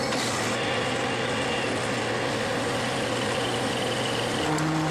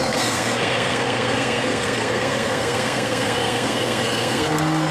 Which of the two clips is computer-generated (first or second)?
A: second